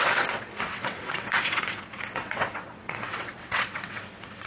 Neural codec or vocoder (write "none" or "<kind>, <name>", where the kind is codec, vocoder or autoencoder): vocoder, WaveNeXt